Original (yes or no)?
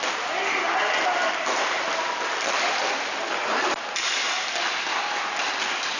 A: yes